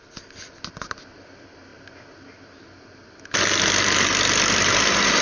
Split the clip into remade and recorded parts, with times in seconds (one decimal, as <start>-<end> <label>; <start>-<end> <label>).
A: 0.0-5.2 recorded